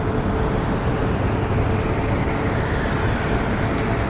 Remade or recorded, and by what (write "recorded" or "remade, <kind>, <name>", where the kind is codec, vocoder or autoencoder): recorded